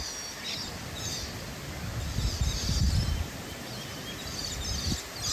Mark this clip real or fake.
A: real